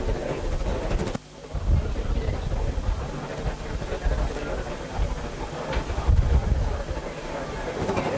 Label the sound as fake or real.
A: real